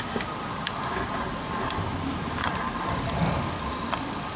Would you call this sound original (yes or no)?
yes